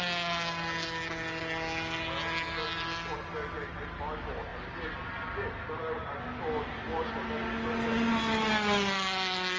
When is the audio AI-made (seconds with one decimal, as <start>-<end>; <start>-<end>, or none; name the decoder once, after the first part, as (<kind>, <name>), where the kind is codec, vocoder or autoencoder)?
none